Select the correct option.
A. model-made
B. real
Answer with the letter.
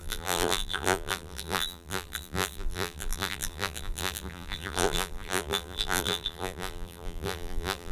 A